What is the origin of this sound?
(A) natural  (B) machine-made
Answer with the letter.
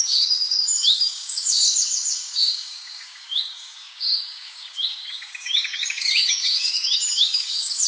B